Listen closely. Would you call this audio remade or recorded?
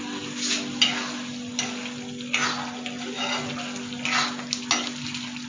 recorded